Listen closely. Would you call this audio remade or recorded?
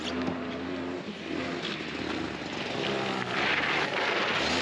recorded